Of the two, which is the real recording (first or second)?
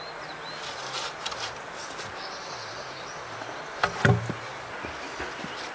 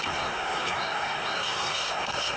first